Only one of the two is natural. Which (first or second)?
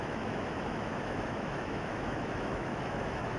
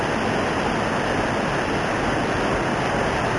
second